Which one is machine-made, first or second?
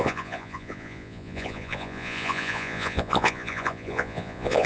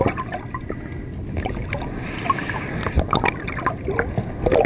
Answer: first